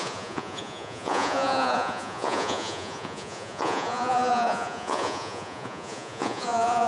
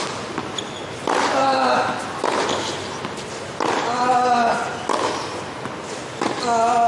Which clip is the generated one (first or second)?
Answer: first